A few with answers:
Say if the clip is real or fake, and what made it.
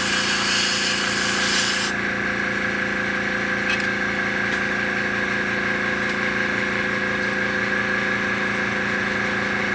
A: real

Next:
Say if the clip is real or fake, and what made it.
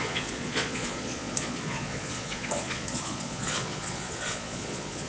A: fake, vocoder, Vocos